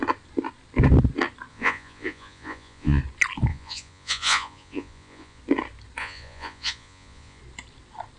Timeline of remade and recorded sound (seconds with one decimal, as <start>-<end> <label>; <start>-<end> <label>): 0.0-1.5 recorded; 1.5-3.0 remade; 3.0-3.5 recorded; 3.5-5.4 remade; 5.4-6.0 recorded; 6.0-7.4 remade; 7.4-8.2 recorded